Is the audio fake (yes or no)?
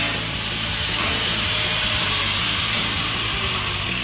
no